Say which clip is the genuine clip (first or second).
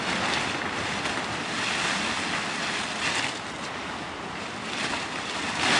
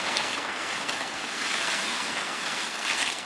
first